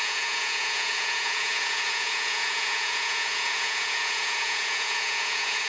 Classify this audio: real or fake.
fake